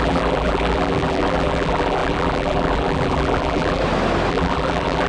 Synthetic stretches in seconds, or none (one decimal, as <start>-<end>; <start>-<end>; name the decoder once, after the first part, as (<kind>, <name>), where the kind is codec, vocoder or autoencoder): 0.0-3.8 (vocoder, BigVGAN v2); 4.3-5.1